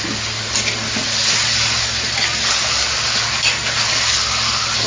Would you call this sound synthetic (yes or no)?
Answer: no